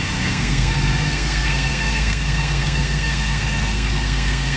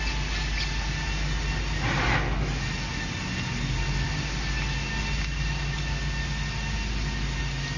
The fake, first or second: first